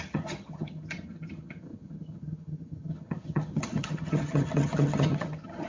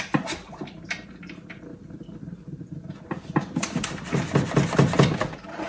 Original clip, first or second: second